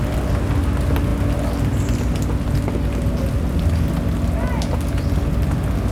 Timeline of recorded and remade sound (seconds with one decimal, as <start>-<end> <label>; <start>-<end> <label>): 0.0-5.9 recorded